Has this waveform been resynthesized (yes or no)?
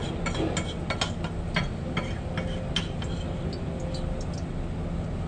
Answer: no